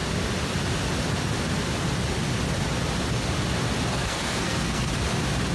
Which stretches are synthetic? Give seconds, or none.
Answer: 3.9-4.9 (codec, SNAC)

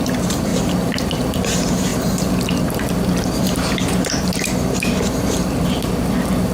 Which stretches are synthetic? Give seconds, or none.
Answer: none